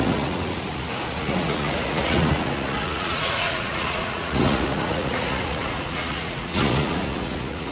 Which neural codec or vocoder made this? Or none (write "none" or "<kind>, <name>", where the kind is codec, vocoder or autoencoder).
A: vocoder, Vocos